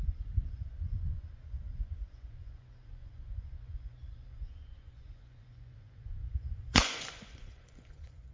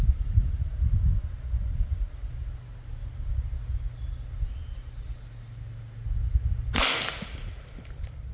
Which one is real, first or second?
second